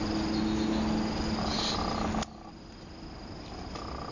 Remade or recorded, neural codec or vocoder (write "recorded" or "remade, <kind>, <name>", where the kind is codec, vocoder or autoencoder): recorded